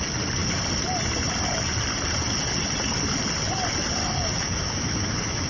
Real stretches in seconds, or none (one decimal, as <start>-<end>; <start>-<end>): 0.0-4.0